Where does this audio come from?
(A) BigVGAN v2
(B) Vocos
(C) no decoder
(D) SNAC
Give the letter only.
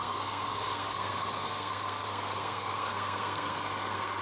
D